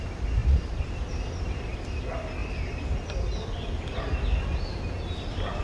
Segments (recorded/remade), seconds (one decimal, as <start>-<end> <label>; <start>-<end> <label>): 0.0-5.6 recorded